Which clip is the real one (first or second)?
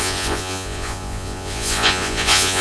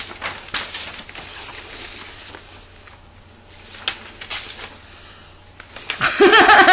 second